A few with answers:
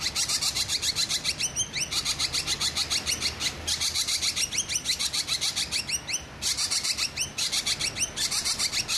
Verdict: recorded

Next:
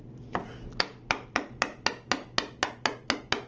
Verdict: recorded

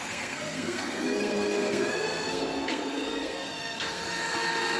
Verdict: remade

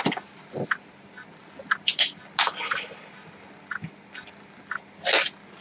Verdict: recorded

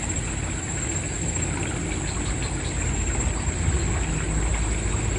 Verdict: recorded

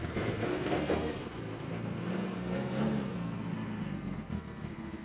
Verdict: remade